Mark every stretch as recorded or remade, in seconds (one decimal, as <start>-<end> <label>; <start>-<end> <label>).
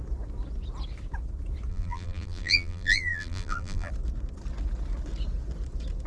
0.0-1.7 recorded; 1.7-3.9 remade; 3.9-6.1 recorded